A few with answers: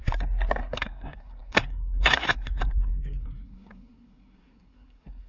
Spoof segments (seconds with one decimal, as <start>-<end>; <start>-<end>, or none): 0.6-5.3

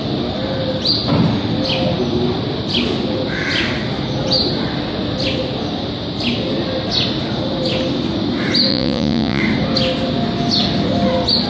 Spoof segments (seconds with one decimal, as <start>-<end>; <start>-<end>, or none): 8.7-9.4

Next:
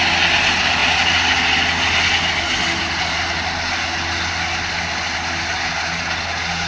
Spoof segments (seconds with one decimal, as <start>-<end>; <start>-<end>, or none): none